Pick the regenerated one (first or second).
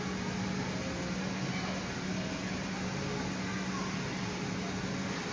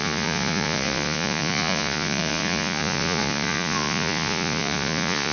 second